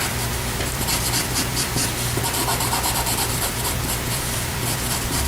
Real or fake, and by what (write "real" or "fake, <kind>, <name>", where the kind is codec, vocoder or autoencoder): fake, vocoder, BigVGAN v2